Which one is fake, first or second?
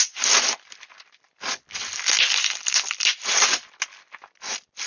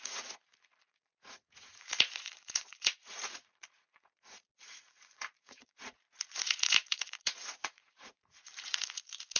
second